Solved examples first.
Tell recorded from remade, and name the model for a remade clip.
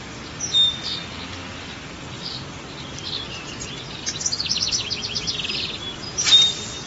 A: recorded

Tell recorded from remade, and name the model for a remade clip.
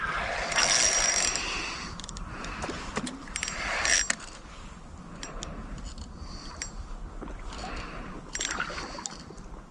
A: recorded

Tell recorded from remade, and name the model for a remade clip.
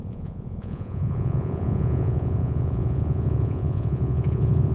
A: remade, vocoder, Vocos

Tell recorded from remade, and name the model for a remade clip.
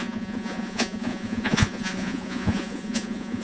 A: remade, vocoder, Vocos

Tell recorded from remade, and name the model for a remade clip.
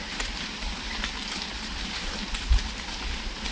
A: recorded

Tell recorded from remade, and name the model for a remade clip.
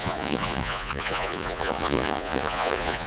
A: remade, vocoder, Vocos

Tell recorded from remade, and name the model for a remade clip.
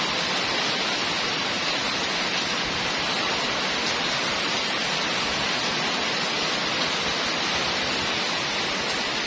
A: recorded